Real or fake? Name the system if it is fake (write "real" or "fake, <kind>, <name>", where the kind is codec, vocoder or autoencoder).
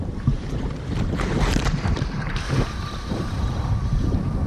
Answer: fake, vocoder, BigVGAN v2